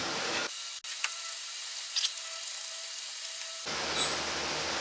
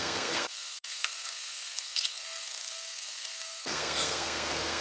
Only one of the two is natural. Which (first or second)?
first